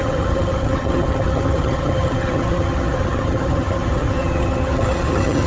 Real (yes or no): no